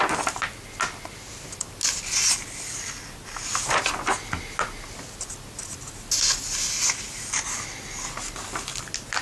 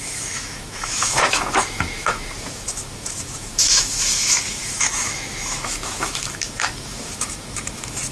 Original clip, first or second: first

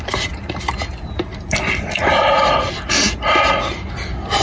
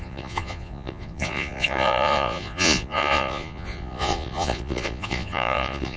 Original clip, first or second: first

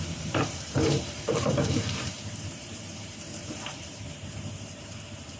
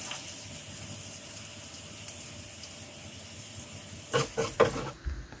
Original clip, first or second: second